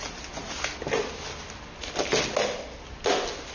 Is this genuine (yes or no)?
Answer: yes